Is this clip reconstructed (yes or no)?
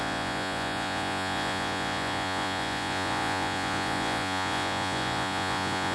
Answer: yes